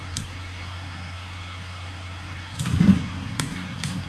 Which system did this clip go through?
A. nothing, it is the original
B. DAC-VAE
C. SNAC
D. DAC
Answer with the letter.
C